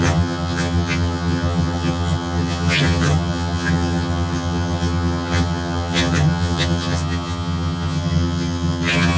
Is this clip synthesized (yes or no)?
yes